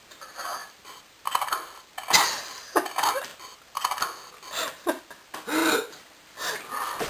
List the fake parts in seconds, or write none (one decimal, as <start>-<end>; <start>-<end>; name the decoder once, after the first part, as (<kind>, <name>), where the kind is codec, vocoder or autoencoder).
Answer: 0.6-1.9 (vocoder, BigVGAN v2); 5.6-6.2